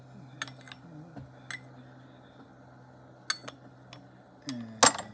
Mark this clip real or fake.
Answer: real